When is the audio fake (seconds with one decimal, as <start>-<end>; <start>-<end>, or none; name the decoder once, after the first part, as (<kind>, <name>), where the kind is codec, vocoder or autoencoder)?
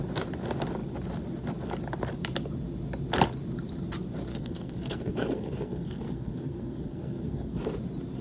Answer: 4.3-7.6 (codec, SNAC)